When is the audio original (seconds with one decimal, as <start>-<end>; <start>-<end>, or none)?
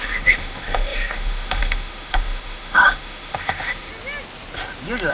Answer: 3.9-5.1